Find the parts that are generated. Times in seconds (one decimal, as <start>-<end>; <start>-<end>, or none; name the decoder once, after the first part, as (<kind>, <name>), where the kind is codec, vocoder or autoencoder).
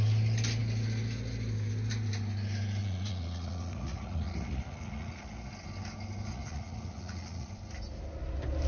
2.8-5.5 (vocoder, Vocos); 6.3-7.5